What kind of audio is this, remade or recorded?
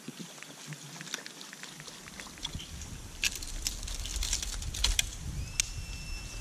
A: recorded